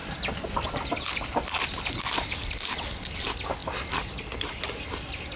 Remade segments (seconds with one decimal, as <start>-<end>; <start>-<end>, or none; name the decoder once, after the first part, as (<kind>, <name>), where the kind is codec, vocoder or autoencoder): none

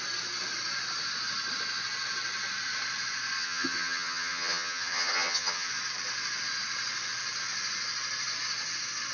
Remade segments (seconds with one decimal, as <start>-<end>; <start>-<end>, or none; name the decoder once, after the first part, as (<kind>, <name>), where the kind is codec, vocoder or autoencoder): 3.4-5.7 (vocoder, HiFi-GAN)

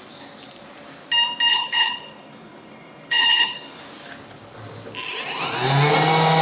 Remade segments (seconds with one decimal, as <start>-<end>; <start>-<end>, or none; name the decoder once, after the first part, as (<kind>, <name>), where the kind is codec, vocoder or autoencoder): 1.5-3.8 (codec, HILCodec)